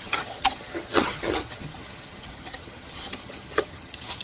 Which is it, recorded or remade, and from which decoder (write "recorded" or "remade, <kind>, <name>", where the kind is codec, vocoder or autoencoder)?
remade, vocoder, HiFi-GAN